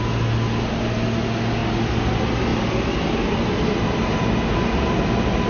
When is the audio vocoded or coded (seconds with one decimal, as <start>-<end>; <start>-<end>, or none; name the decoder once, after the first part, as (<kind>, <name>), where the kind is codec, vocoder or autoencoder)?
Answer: none